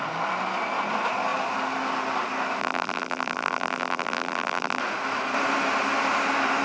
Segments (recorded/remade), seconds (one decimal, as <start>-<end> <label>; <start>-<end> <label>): 0.0-2.6 recorded; 2.6-4.8 remade; 4.8-6.6 recorded